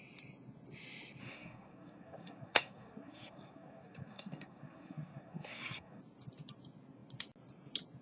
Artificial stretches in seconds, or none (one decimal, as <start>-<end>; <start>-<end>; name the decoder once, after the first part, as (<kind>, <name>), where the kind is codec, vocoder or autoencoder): 1.2-6.0 (codec, SNAC)